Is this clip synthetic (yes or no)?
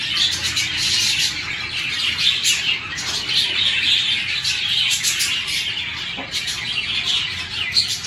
no